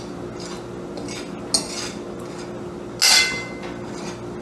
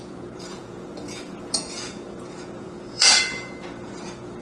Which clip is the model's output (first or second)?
second